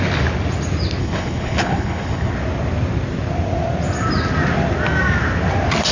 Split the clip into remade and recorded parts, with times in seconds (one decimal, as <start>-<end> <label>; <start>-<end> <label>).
0.0-1.0 recorded; 1.0-2.3 remade; 2.3-5.9 recorded